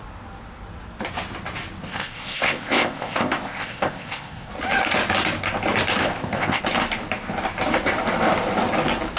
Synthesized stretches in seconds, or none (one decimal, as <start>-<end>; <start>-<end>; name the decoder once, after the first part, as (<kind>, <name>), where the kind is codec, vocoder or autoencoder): 1.9-4.5 (codec, ZipCodec); 6.0-6.6